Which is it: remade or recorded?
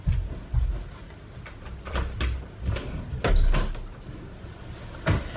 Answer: recorded